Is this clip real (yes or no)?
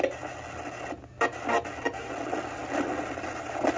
yes